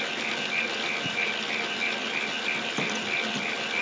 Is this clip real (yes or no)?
yes